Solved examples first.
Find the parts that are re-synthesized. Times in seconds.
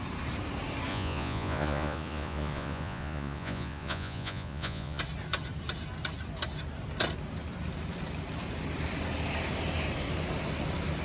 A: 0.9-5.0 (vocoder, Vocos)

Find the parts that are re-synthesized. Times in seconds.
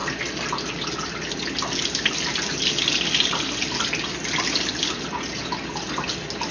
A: none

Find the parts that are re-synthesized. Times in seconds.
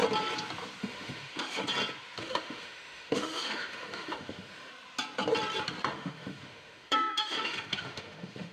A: 0.8-1.6 (autoencoder, DAC-VAE); 2.2-4.7; 5.9-8.5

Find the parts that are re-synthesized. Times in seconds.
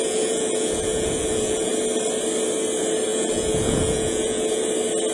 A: 0.0-1.7 (vocoder, Vocos); 3.1-4.6